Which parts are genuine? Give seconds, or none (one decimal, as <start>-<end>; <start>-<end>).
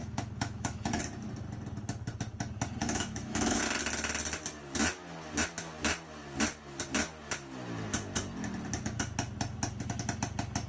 1.0-2.8; 3.6-10.7